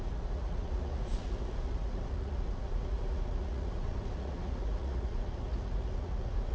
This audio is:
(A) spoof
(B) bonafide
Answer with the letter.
A